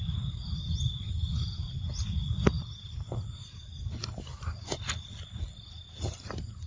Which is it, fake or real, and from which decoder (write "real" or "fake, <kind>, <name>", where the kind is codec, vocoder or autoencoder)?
real